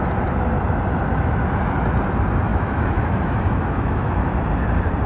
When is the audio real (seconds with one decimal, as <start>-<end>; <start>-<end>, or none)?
0.0-2.5; 4.2-5.1